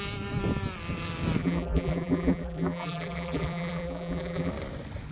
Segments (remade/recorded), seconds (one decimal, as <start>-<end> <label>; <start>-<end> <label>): 0.0-1.4 recorded; 1.4-4.5 remade; 4.5-5.1 recorded